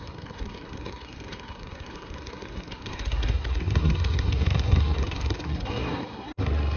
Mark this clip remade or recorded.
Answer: remade